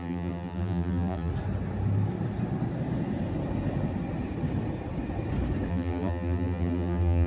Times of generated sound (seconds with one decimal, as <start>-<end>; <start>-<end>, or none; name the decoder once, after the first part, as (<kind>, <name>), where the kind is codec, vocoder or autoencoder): 0.0-1.3 (vocoder, BigVGAN v2); 5.7-7.3